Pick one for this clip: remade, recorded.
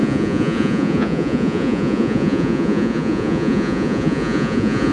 remade